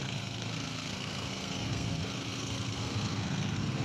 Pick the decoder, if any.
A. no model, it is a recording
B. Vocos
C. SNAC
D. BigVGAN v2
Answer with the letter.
C